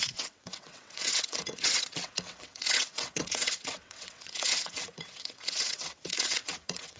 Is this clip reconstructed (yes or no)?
yes